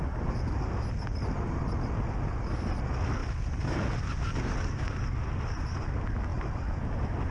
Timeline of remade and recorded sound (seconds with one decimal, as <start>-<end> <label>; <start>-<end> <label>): 0.0-7.3 recorded